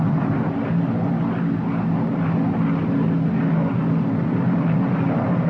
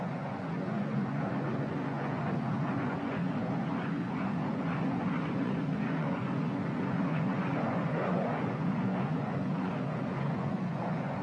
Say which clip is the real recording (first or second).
first